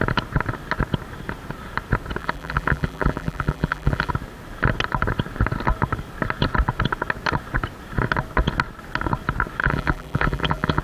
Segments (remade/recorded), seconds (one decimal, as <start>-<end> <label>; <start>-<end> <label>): 0.0-2.2 recorded; 2.2-4.1 remade; 4.1-9.6 recorded; 9.6-10.8 remade